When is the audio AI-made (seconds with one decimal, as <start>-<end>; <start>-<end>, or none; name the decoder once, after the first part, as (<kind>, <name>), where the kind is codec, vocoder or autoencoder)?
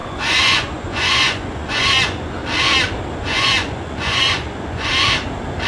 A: 0.0-2.4 (vocoder, Vocos); 3.1-4.9